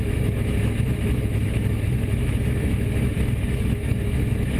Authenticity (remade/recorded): remade